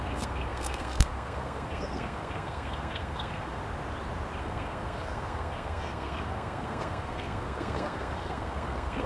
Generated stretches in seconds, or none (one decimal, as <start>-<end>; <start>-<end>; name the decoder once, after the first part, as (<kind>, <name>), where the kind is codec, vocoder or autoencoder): 0.0-3.6 (codec, SNAC); 4.4-9.1